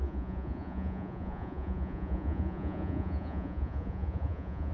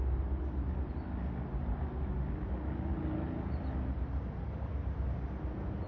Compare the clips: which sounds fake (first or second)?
first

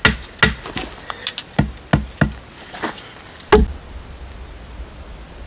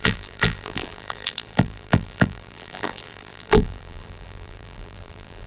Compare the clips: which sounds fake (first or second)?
second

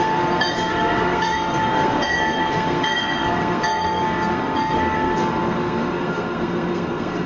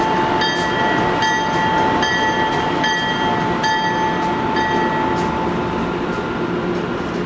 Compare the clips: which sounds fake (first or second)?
first